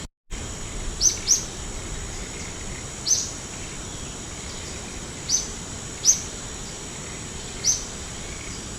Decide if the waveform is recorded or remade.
recorded